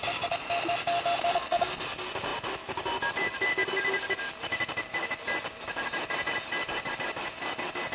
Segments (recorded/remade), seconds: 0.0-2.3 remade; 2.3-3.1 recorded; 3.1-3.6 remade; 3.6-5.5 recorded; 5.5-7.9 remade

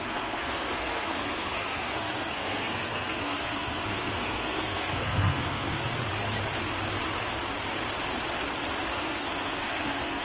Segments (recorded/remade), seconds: 0.0-5.9 remade; 5.9-8.9 recorded; 8.9-10.2 remade

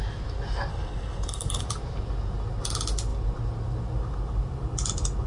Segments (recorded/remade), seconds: 0.0-0.7 recorded; 0.7-1.6 remade; 1.6-5.3 recorded

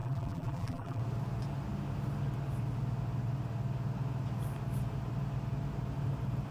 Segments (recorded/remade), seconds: 0.0-1.0 remade; 1.0-6.5 recorded

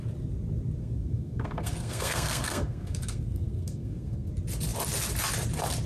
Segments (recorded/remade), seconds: 0.0-0.8 recorded; 0.8-4.3 remade; 4.3-5.9 recorded

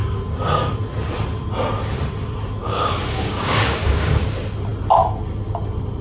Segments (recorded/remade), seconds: 0.0-0.7 remade; 0.7-2.6 recorded; 2.6-4.2 remade; 4.2-6.0 recorded

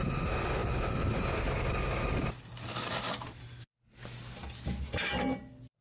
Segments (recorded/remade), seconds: 0.0-5.8 recorded

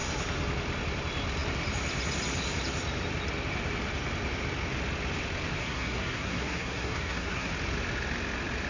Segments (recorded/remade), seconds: 0.0-5.6 recorded; 5.6-7.5 remade; 7.5-8.7 recorded